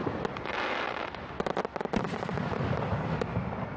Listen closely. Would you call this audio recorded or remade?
recorded